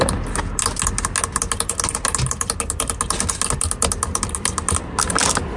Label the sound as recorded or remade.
recorded